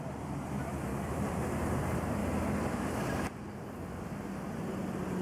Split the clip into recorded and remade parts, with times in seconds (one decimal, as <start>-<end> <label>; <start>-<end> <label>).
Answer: 0.0-5.2 recorded